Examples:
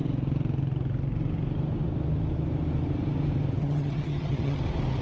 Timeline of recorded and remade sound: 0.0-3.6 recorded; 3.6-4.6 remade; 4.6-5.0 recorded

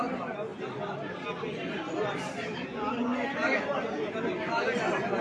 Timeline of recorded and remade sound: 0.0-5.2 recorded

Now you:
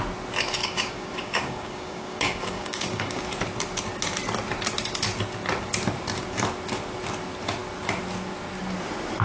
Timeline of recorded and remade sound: 0.0-0.6 recorded; 0.6-3.2 remade; 3.2-9.2 recorded